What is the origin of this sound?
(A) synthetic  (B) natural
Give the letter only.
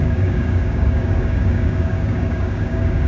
A